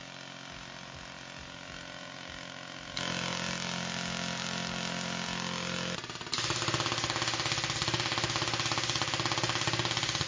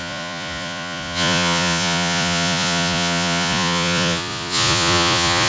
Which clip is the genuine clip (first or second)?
first